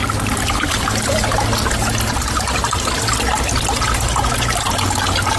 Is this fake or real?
real